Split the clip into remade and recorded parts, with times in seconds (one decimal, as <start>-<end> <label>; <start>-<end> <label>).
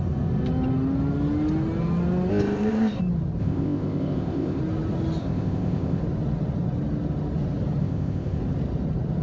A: 0.0-2.3 recorded; 2.3-3.0 remade; 3.0-3.4 recorded; 3.4-4.6 remade; 4.6-5.2 recorded; 5.2-6.0 remade; 6.0-7.8 recorded; 7.8-8.4 remade; 8.4-9.2 recorded